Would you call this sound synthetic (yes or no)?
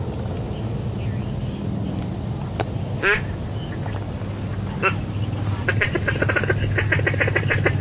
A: no